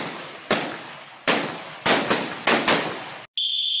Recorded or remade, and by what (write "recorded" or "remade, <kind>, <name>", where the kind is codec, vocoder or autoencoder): recorded